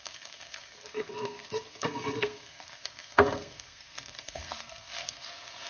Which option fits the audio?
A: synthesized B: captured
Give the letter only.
A